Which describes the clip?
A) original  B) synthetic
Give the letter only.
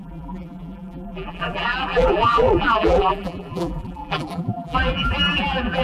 B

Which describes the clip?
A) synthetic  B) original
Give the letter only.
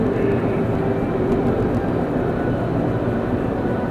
B